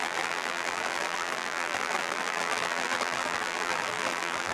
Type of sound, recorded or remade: remade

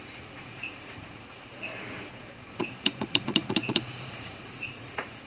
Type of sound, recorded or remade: remade